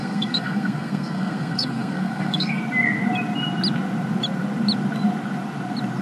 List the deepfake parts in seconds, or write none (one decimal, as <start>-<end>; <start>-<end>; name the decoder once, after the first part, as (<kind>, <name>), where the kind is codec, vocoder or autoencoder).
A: 0.0-2.6 (codec, SNAC)